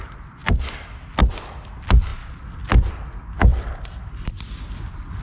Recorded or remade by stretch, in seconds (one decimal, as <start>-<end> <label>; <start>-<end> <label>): 0.0-5.2 recorded